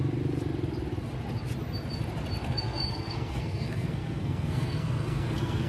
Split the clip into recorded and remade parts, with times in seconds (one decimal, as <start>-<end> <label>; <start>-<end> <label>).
0.0-2.4 recorded; 2.4-5.7 remade